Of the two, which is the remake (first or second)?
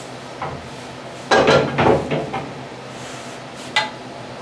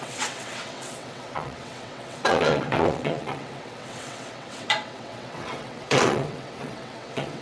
second